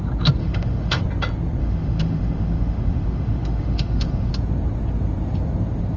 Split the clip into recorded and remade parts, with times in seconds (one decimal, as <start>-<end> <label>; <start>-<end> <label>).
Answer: 0.0-0.4 recorded; 0.4-1.0 remade; 1.0-1.6 recorded; 1.6-4.3 remade; 4.3-6.0 recorded